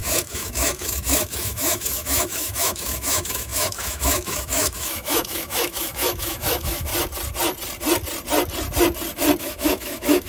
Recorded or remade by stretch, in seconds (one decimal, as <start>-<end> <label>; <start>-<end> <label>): 0.0-6.9 remade; 6.9-9.4 recorded; 9.4-10.3 remade